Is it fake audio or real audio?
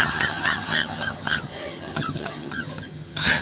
fake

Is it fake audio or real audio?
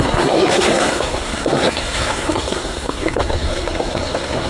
fake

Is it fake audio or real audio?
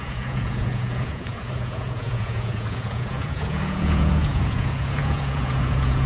fake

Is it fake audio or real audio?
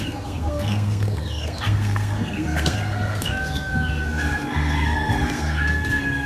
fake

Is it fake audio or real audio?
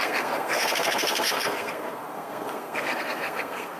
fake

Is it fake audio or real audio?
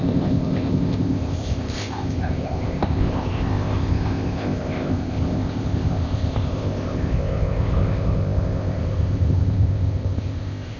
fake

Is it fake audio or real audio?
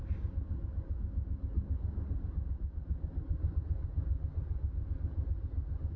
real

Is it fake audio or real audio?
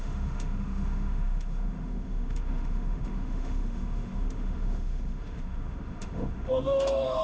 fake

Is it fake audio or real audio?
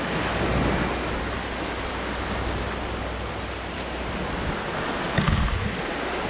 real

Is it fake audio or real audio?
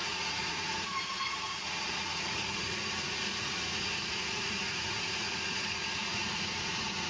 fake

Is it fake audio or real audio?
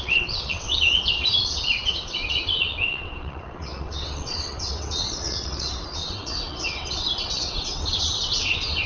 fake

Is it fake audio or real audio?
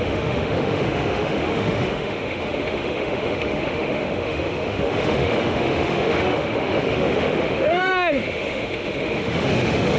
fake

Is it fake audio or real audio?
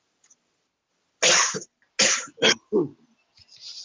real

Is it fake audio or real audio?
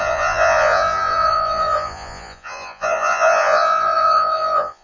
fake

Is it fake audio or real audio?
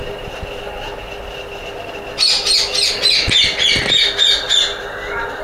real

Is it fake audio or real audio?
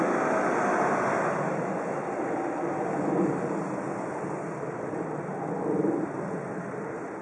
real